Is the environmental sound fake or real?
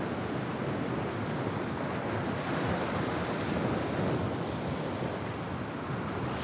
real